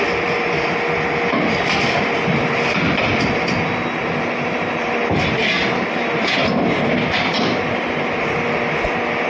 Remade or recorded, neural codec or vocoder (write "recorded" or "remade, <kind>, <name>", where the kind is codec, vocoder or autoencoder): recorded